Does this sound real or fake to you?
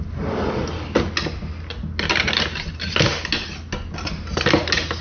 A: real